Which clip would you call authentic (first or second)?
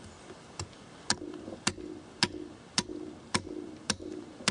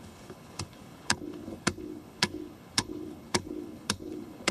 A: first